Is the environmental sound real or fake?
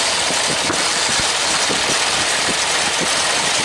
real